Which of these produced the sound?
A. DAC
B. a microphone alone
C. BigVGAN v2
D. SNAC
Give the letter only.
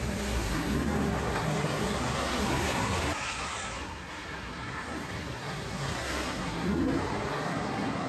D